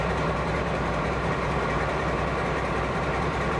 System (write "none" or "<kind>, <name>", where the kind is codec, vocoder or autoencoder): vocoder, BigVGAN v2